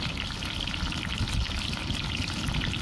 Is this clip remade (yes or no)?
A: no